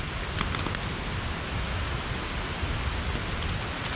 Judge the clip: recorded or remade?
recorded